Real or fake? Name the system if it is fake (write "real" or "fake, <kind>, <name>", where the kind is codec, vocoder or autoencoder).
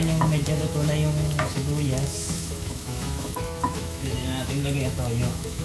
fake, autoencoder, DAC-VAE